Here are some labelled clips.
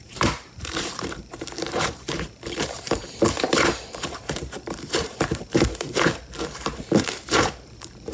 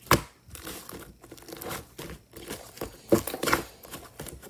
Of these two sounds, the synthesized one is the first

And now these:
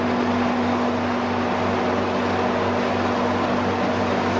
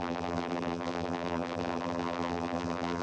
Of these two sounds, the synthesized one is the second